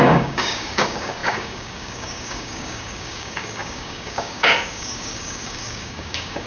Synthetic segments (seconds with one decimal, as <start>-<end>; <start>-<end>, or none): 0.0-6.5